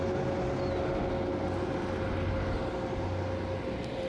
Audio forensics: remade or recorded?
recorded